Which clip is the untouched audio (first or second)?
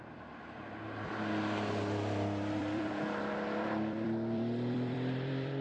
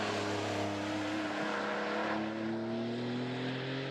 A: second